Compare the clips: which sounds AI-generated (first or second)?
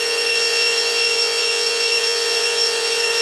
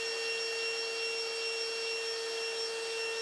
first